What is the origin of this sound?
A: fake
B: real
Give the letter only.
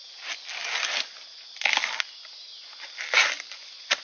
B